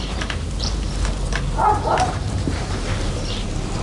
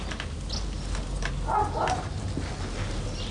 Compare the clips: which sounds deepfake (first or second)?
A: first